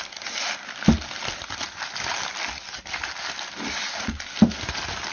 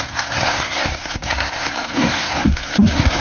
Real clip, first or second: first